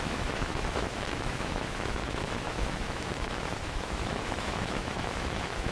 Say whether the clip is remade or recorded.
remade